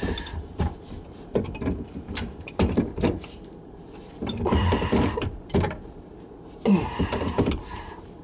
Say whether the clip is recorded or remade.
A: remade